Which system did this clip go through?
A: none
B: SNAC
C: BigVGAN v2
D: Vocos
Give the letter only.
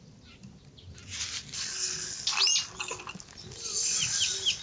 A